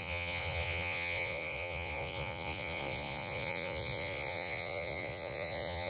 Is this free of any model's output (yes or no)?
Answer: no